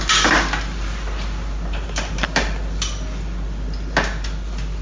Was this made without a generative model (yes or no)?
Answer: yes